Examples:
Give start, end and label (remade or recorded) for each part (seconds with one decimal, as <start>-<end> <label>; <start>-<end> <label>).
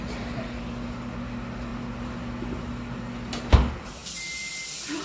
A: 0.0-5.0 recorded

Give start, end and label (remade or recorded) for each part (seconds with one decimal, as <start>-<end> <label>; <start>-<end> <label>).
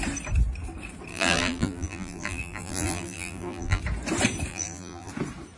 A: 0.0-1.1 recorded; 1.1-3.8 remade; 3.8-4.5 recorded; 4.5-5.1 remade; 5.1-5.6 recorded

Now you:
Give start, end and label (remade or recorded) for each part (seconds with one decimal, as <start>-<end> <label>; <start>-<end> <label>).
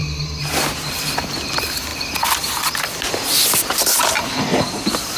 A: 0.0-0.9 remade; 0.9-5.2 recorded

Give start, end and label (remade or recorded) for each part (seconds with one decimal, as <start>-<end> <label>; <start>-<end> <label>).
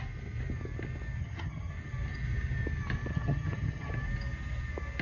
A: 0.0-1.2 recorded; 1.2-1.7 remade; 1.7-3.1 recorded; 3.1-3.9 remade; 3.9-5.0 recorded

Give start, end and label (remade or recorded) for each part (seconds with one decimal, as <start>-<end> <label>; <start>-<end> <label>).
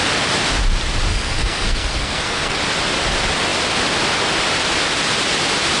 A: 0.0-1.1 recorded; 1.1-2.6 remade; 2.6-5.8 recorded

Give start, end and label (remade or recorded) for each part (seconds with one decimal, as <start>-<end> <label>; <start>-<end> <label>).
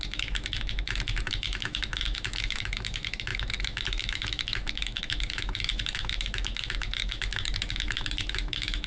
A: 0.0-8.9 remade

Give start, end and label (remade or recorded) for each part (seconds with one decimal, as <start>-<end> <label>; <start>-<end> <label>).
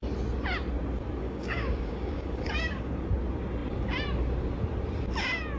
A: 0.0-1.2 recorded; 1.2-2.9 remade; 2.9-5.6 recorded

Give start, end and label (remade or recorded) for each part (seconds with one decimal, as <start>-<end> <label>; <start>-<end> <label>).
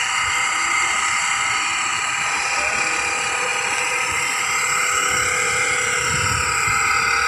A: 0.0-1.9 recorded; 1.9-2.9 remade; 2.9-3.5 recorded; 3.5-4.1 remade; 4.1-7.3 recorded